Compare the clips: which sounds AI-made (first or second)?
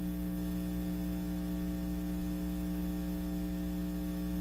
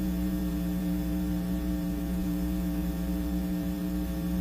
second